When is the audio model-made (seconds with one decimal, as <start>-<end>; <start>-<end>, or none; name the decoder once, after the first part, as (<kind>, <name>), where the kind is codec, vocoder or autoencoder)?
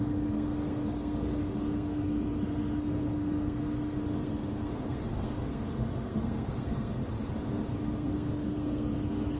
0.0-7.0 (codec, SNAC); 7.7-9.4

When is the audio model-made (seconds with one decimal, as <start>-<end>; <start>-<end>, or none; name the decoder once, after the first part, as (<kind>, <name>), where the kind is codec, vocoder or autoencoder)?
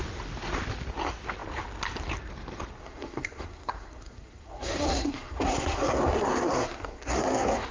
2.8-7.7 (codec, SNAC)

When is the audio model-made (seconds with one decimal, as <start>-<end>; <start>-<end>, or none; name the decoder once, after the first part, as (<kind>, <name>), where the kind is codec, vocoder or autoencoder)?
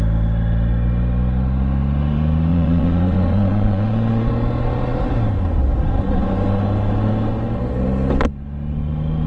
2.5-4.3 (vocoder, Vocos)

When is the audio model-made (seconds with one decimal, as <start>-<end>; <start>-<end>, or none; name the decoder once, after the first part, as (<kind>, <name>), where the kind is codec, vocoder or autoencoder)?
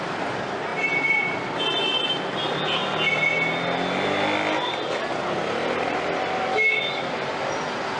6.5-7.1 (autoencoder, DAC-VAE)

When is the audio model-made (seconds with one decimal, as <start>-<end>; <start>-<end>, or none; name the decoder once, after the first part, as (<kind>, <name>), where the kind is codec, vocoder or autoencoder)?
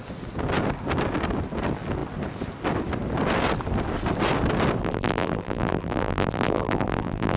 4.8-7.4 (vocoder, BigVGAN v2)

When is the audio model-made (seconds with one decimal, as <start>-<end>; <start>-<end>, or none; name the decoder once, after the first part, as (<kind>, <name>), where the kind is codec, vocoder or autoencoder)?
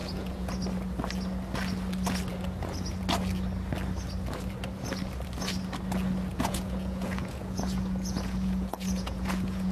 0.0-0.5 (vocoder, Vocos); 6.3-9.7